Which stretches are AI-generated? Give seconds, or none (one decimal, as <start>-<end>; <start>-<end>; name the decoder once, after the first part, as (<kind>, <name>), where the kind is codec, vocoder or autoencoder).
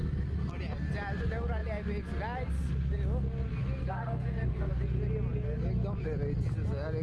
3.8-4.7 (codec, SNAC)